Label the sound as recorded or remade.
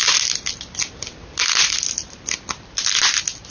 recorded